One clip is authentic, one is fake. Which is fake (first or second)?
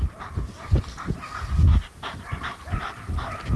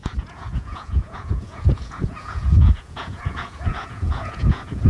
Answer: second